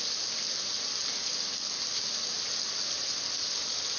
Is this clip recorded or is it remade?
recorded